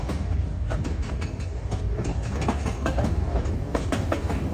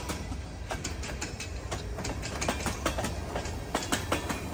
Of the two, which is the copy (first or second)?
first